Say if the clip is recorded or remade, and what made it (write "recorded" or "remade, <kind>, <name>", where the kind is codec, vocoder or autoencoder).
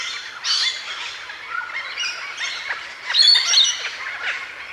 recorded